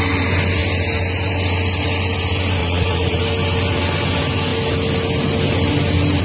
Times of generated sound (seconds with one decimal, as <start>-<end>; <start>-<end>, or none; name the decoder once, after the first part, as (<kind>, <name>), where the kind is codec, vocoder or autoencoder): 2.6-3.2 (vocoder, Vocos)

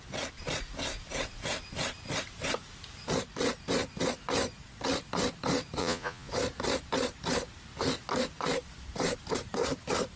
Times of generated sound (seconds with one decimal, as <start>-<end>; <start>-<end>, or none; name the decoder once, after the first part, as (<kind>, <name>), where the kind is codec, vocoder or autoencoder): 5.8-6.3 (vocoder, Vocos)

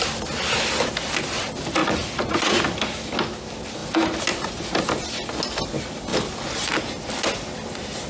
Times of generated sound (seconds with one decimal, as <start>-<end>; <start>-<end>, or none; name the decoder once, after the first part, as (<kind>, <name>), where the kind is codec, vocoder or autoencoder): 1.8-2.6 (vocoder, Vocos)

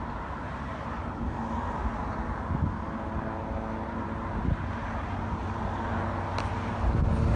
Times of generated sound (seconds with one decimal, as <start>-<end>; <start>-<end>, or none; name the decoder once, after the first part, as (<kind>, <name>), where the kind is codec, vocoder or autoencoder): none

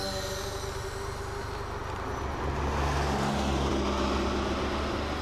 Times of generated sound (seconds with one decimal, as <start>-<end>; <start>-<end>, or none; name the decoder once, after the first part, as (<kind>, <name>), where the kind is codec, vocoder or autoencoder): none

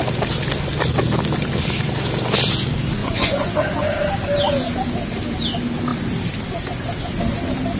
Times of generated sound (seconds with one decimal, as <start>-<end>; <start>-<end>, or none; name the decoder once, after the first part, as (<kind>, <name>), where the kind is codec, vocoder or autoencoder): 3.0-3.9 (vocoder, Vocos)

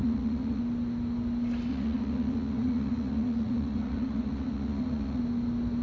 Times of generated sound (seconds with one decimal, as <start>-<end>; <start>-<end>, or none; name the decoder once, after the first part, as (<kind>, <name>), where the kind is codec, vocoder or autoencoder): 0.0-0.6 (vocoder, Vocos); 1.7-5.2